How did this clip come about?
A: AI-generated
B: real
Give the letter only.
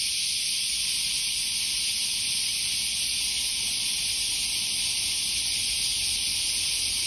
B